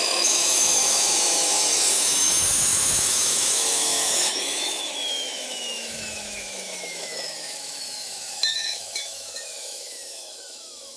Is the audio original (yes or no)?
no